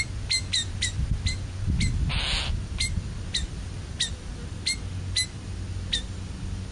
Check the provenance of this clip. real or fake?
real